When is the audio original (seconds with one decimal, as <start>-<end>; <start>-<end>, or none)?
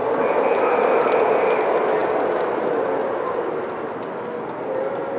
0.6-5.2